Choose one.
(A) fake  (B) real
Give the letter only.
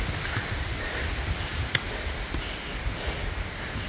B